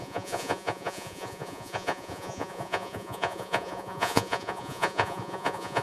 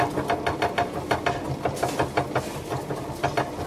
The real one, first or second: second